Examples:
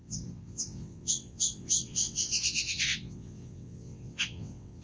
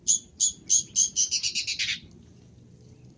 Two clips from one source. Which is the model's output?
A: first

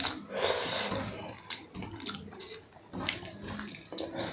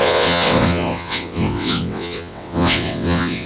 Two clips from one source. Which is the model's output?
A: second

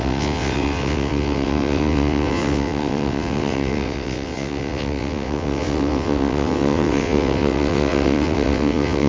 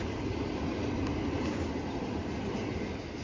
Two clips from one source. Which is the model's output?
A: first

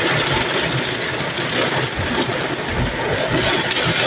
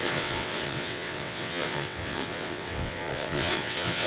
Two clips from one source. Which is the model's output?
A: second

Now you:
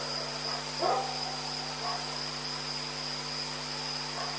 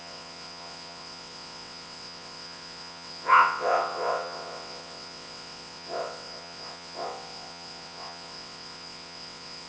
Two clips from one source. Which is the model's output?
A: second